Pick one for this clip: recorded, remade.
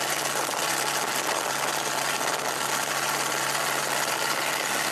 recorded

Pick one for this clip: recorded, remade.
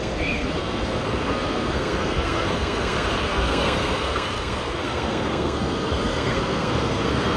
remade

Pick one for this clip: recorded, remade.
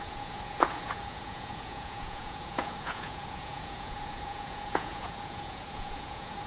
remade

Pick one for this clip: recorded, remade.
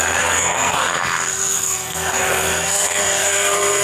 remade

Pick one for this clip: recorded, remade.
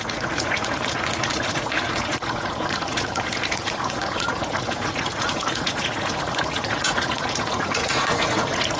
remade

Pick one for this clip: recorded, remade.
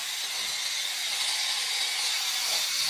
recorded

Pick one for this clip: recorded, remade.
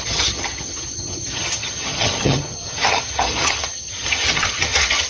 remade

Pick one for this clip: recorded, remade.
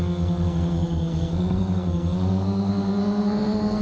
remade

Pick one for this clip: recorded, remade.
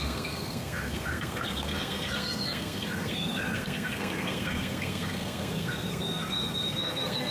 remade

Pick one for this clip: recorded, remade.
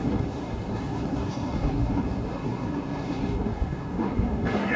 remade